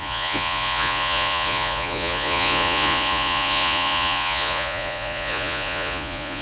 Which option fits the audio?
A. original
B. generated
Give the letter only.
B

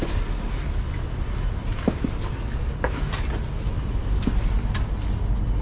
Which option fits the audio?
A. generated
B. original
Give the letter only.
B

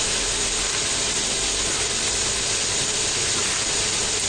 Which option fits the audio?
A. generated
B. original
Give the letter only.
B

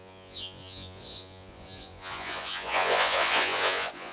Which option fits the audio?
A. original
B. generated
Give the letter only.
B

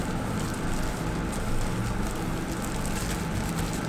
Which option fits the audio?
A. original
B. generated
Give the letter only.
A